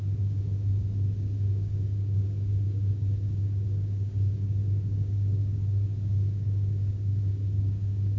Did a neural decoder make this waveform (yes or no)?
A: yes